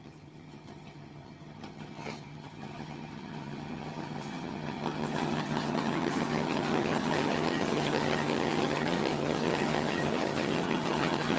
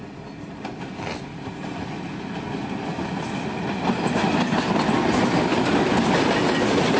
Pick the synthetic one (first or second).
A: first